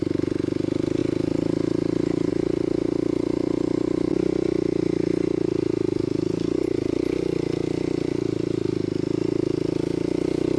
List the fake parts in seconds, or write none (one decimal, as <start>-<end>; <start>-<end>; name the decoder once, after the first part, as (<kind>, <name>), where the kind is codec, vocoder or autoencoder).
none